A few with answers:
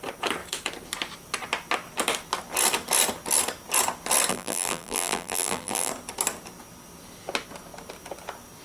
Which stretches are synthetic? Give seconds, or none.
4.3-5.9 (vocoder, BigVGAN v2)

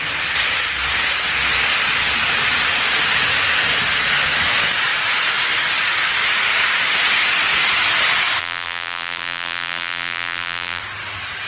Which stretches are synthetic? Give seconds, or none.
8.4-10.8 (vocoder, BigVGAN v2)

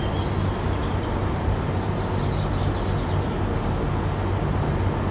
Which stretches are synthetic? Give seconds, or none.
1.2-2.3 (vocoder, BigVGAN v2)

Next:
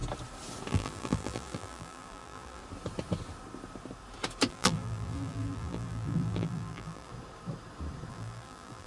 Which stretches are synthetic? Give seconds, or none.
0.7-2.6 (vocoder, BigVGAN v2); 4.5-7.1; 8.1-8.9

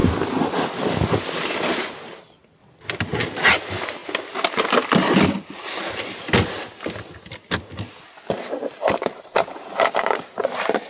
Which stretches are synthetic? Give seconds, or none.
1.8-2.6 (vocoder, BigVGAN v2); 3.2-4.0; 8.4-10.9

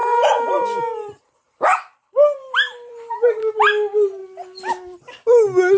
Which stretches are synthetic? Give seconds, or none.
0.0-3.5 (vocoder, BigVGAN v2)

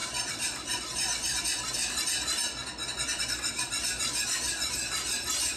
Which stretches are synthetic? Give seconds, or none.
0.0-1.4 (vocoder, BigVGAN v2)

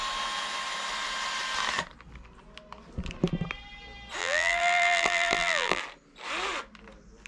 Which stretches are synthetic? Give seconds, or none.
4.2-5.8 (vocoder, BigVGAN v2)